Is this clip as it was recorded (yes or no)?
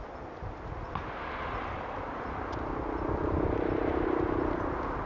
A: yes